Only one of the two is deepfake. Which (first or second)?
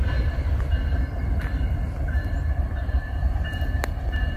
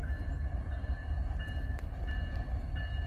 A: first